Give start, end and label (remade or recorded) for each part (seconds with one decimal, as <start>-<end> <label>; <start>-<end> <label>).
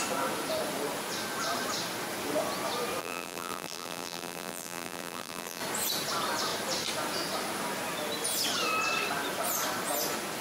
0.0-3.0 recorded; 3.0-5.6 remade; 5.6-10.4 recorded